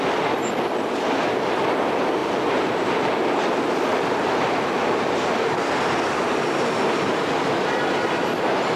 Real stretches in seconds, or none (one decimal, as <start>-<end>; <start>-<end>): 0.0-2.2; 3.4-3.9; 5.6-8.8